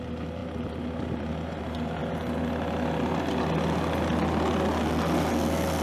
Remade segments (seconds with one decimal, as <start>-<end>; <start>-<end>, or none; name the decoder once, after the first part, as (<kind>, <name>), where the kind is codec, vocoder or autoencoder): none